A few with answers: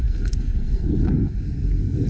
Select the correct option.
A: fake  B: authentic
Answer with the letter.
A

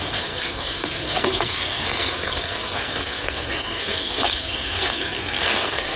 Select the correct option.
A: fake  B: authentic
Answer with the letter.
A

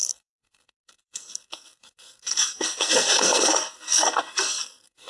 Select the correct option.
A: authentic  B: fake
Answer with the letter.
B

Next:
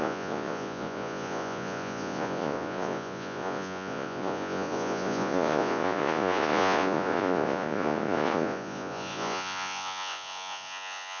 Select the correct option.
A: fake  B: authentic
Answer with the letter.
A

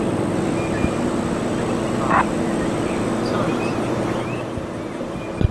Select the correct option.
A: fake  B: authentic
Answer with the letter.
B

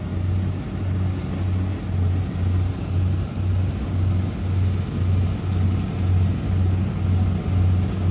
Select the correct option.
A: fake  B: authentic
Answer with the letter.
B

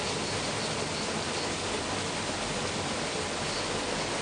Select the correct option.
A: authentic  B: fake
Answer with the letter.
A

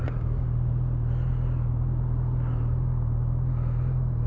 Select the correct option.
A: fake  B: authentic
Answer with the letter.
B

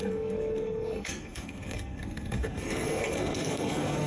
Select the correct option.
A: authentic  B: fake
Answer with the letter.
B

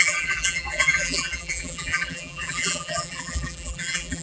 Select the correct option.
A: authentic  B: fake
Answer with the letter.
B